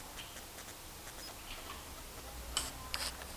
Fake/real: real